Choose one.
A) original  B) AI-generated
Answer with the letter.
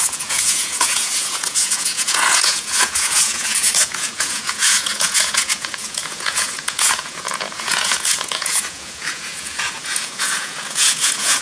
B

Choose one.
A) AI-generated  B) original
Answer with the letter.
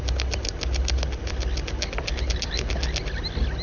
B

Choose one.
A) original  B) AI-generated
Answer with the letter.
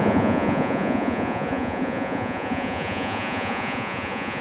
B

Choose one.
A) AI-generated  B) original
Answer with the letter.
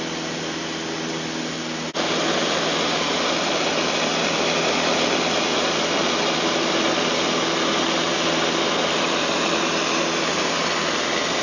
B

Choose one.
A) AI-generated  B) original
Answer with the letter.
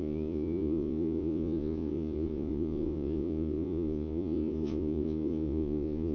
A